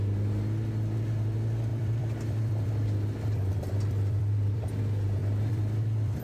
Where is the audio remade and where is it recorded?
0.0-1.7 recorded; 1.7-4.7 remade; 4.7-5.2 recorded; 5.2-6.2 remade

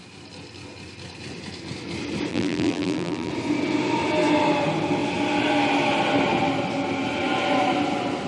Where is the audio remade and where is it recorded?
0.0-2.3 recorded; 2.3-3.3 remade; 3.3-8.3 recorded

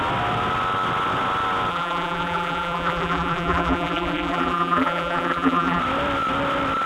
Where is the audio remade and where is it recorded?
0.0-1.7 recorded; 1.7-5.8 remade; 5.8-6.9 recorded

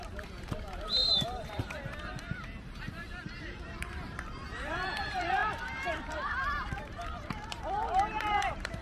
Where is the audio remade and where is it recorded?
0.0-8.8 remade